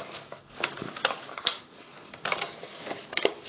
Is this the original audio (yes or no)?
no